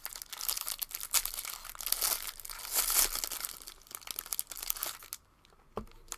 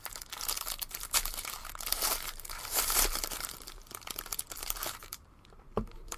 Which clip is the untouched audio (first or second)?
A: first